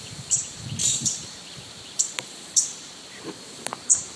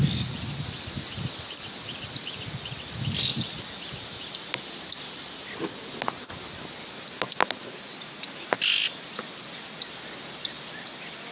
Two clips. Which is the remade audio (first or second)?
first